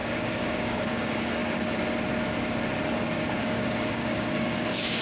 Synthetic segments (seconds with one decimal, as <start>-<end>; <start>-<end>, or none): 0.0-1.4; 3.4-5.0